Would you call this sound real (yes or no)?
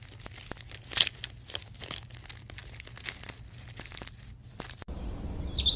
yes